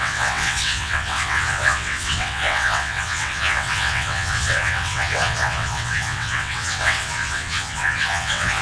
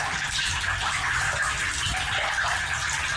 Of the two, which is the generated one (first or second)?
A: first